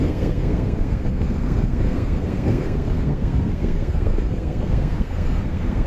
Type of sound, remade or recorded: remade